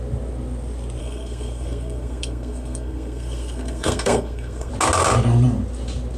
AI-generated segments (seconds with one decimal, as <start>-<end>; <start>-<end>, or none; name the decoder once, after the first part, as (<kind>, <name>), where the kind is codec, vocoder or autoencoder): 1.0-4.7 (codec, SNAC)